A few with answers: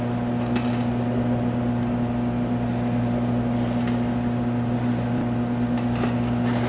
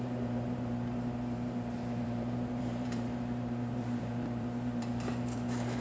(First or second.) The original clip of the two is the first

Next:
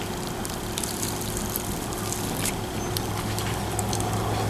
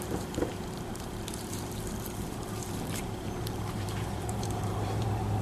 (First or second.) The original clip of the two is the first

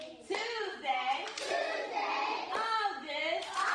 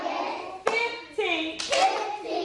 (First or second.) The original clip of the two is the second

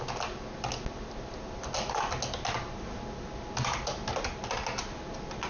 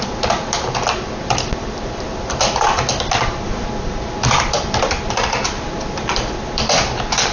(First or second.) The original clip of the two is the first